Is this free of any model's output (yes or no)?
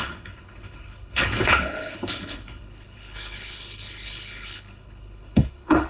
no